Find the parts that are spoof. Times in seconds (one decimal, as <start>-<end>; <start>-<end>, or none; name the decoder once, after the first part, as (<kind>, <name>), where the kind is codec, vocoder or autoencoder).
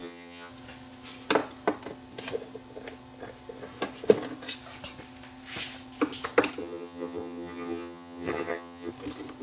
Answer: 0.0-0.5 (vocoder, HiFi-GAN); 6.6-8.9